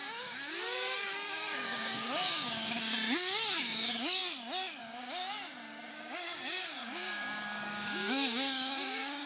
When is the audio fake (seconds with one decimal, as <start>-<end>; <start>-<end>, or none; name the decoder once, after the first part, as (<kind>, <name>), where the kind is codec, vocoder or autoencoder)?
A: 0.0-4.2 (codec, DAC); 4.8-5.2; 5.9-9.3